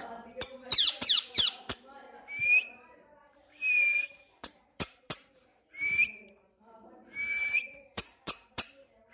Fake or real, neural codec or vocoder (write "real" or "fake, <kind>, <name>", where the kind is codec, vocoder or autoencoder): fake, vocoder, BigVGAN v2